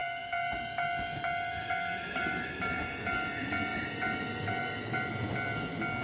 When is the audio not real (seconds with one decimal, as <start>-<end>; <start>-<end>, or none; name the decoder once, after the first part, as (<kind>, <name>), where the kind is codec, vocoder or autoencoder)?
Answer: 0.0-2.9 (vocoder, BigVGAN v2)